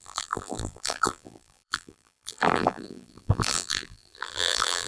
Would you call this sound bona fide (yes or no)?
no